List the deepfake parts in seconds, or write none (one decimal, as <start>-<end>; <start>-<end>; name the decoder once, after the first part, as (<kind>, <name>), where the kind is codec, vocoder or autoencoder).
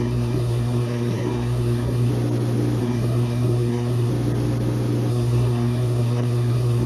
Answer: 0.0-2.1 (codec, SNAC); 2.8-4.1; 5.1-6.9